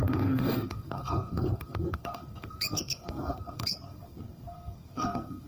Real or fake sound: fake